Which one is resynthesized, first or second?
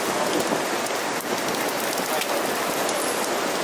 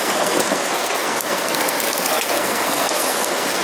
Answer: second